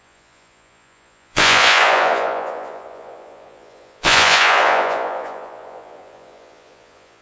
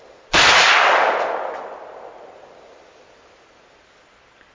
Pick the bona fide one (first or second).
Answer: second